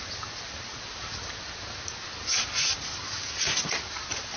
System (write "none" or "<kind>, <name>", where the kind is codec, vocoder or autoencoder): none